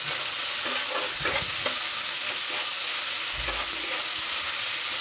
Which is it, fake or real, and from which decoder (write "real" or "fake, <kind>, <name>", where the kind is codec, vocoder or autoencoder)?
real